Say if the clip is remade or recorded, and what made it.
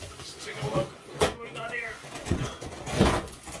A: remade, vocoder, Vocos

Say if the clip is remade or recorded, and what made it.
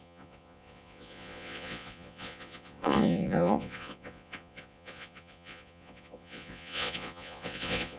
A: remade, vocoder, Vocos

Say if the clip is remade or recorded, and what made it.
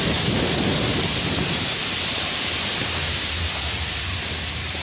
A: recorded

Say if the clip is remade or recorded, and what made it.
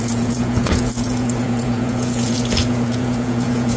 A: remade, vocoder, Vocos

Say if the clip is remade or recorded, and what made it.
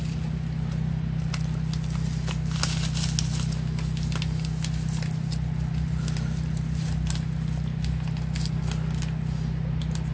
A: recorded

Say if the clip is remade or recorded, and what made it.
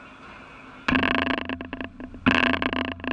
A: recorded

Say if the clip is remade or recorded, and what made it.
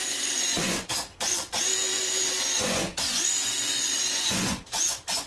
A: remade, vocoder, Vocos